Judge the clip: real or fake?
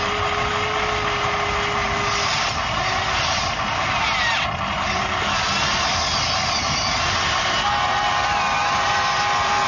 real